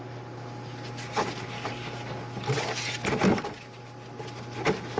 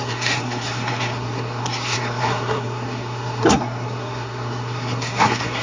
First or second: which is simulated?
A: second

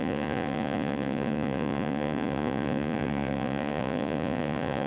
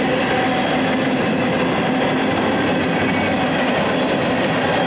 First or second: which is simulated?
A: first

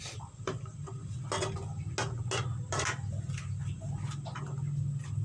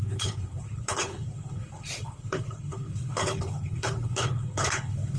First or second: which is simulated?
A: second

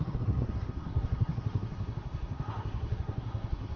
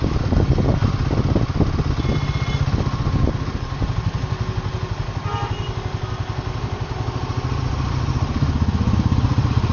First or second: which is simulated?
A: first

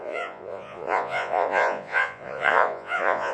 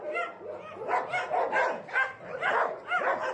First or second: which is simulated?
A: first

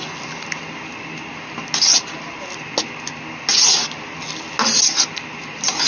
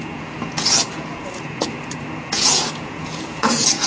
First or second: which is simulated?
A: second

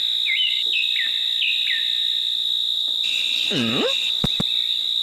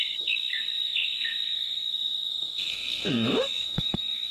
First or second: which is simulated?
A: second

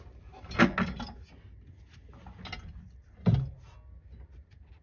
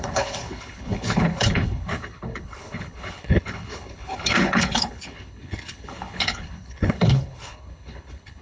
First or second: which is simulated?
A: second